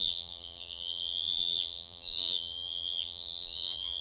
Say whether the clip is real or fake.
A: fake